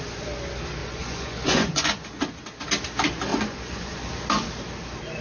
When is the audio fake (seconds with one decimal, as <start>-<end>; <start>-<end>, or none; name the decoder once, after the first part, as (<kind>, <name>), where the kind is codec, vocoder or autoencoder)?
0.8-2.2 (vocoder, Vocos); 3.3-4.1